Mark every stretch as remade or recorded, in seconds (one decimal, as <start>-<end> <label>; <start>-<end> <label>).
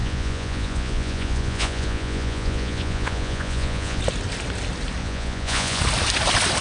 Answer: 0.0-4.0 remade; 4.0-5.0 recorded; 5.0-5.8 remade; 5.8-6.6 recorded